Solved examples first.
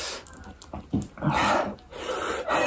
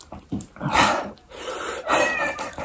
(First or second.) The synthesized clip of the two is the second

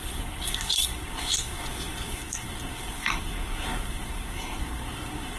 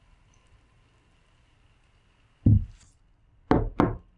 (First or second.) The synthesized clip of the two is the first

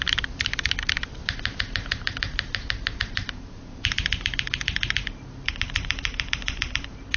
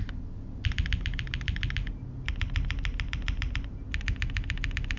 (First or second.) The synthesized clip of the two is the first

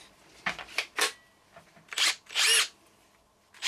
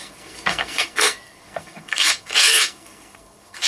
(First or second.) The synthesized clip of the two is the second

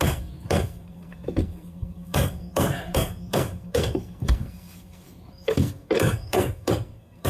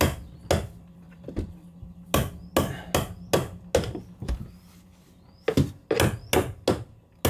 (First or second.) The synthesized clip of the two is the first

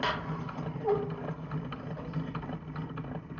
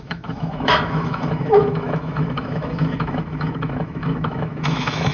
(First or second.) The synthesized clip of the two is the second